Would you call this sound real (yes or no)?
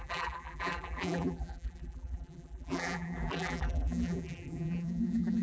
no